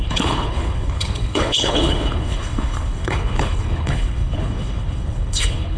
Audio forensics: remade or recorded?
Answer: remade